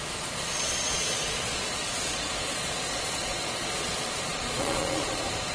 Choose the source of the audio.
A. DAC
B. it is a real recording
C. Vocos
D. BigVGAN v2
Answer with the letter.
C